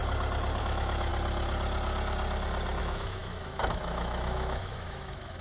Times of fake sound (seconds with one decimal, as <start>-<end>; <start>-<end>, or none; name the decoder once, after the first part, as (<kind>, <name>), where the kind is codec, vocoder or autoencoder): 0.6-1.1 (autoencoder, DAC-VAE); 2.8-5.4